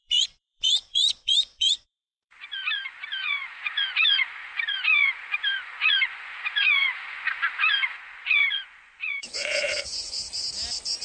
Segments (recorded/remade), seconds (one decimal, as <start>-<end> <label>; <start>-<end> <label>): 0.0-10.2 remade; 10.2-11.0 recorded